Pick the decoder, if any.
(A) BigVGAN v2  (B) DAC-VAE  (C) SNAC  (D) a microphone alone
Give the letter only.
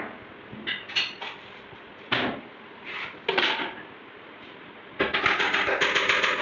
D